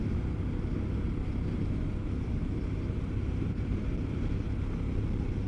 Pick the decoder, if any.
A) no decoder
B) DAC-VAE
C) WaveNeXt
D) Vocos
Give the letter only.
A